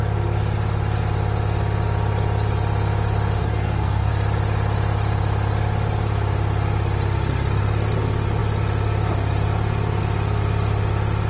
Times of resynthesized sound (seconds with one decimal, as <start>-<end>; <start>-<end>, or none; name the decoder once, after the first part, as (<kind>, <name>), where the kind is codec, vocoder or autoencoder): 3.4-4.1 (codec, SNAC)